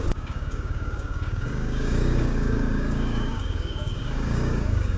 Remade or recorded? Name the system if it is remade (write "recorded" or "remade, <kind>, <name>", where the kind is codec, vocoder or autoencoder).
remade, codec, DAC